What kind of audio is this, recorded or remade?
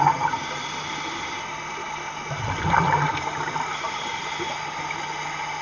recorded